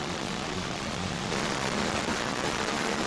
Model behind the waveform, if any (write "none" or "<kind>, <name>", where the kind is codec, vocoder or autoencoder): vocoder, Vocos